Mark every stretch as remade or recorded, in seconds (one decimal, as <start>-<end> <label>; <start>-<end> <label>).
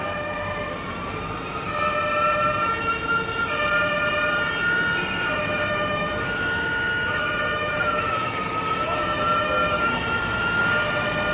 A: 0.0-5.4 recorded; 5.4-10.6 remade; 10.6-11.3 recorded